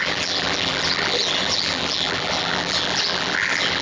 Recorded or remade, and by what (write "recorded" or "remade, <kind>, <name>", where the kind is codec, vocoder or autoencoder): remade, vocoder, BigVGAN v2